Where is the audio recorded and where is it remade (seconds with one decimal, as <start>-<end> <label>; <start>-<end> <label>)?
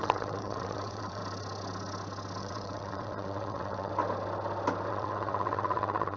0.0-1.2 remade; 1.2-2.4 recorded; 2.4-3.9 remade; 3.9-4.9 recorded; 4.9-6.2 remade